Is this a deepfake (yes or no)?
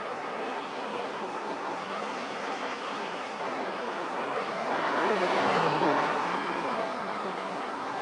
yes